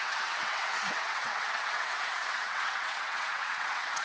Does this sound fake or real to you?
fake